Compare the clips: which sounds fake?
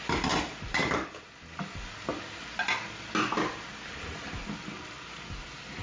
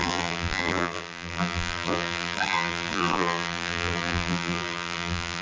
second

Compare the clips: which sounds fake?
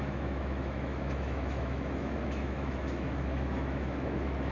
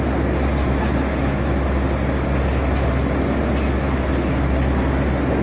first